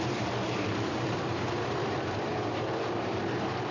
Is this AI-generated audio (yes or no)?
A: yes